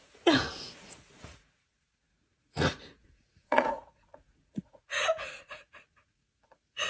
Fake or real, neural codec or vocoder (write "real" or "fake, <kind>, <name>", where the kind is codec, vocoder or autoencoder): fake, vocoder, Vocos